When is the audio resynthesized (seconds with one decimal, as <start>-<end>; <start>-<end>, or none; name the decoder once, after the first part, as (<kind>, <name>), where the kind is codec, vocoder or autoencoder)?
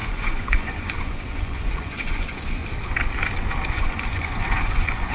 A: 0.0-2.6 (vocoder, Vocos); 3.7-5.1